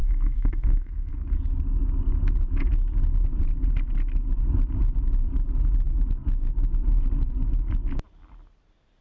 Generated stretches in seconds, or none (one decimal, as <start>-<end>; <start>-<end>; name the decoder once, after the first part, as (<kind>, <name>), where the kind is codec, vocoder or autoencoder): 0.0-1.1 (codec, SNAC)